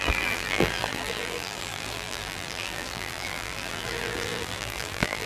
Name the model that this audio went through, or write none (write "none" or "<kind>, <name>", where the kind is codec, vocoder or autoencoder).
vocoder, BigVGAN v2